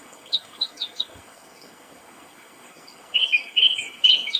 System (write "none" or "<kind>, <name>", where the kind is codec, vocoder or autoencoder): codec, SNAC